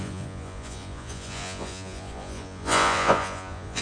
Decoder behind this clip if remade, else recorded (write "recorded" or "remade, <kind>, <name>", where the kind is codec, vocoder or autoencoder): remade, vocoder, Vocos